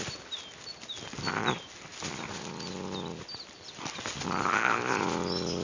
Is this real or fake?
real